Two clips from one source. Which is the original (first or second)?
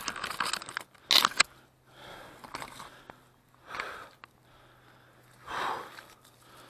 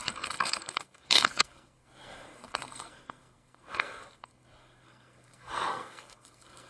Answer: first